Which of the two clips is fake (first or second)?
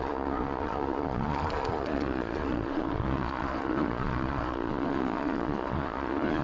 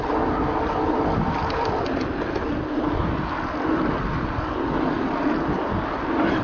first